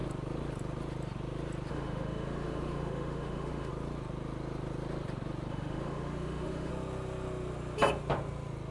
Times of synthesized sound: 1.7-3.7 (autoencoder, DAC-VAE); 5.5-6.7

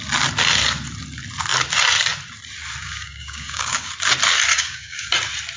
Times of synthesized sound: 2.8-3.9 (codec, DAC); 4.5-5.1

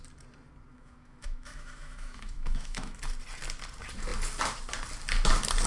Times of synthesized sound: 0.7-3.0 (autoencoder, DAC-VAE)

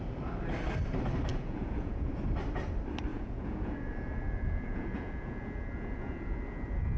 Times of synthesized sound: 1.3-2.1 (vocoder, Vocos); 3.1-6.4

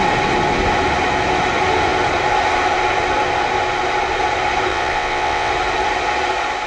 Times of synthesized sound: 4.7-5.5 (vocoder, WaveNeXt)

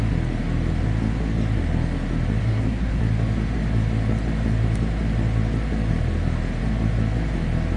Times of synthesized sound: 2.4-3.0 (codec, SNAC)